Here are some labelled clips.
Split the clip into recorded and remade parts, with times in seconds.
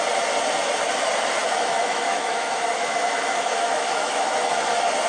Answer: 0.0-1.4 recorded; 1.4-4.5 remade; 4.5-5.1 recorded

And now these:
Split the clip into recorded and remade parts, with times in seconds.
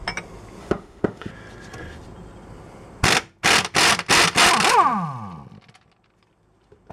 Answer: 0.0-0.6 recorded; 0.6-1.3 remade; 1.3-6.9 recorded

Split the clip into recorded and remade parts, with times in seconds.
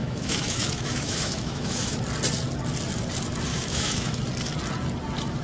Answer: 0.0-2.0 remade; 2.0-3.5 recorded; 3.5-4.2 remade; 4.2-5.4 recorded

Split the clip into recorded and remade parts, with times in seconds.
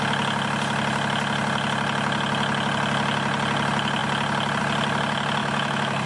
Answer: 0.0-5.4 recorded; 5.4-6.1 remade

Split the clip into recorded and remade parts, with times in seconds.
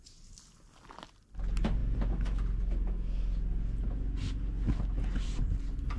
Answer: 0.0-6.0 recorded